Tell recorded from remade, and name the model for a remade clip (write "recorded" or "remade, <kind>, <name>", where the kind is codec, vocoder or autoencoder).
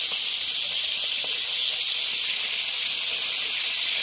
recorded